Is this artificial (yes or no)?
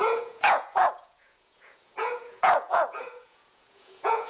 yes